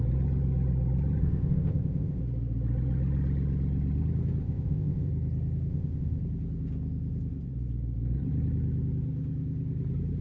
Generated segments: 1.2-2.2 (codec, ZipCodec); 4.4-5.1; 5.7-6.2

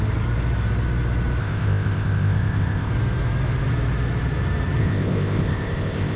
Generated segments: 1.4-2.9 (codec, ZipCodec); 4.8-6.2

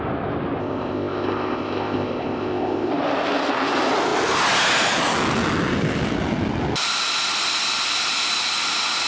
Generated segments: 0.6-2.9 (codec, ZipCodec)

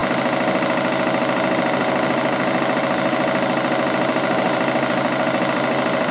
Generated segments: none

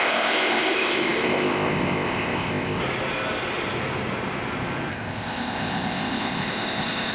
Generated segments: 0.0-2.8 (codec, ZipCodec); 4.9-7.1